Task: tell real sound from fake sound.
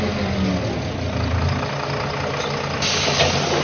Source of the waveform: real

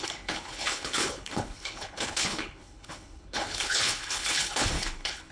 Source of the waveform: fake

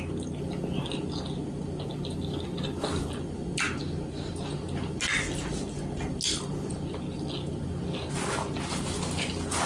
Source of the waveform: real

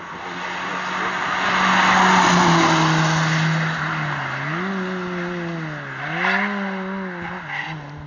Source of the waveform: real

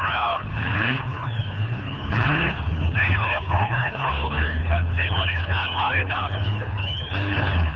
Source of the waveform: fake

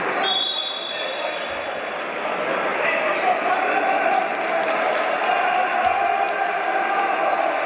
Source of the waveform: real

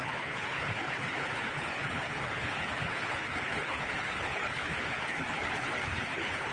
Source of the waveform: fake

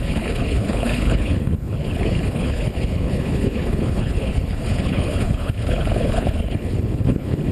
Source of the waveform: fake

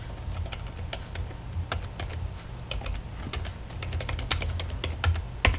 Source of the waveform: real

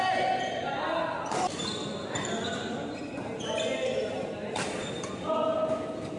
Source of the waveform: real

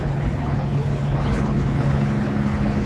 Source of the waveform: fake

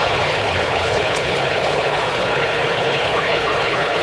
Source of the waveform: fake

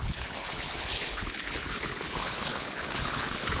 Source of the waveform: fake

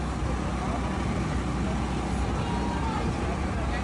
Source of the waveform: real